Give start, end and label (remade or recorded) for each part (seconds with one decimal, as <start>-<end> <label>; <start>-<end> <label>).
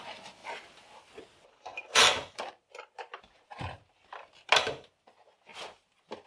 0.0-1.7 recorded; 1.7-4.5 remade; 4.5-6.3 recorded